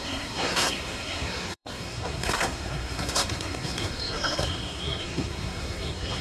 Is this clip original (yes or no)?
no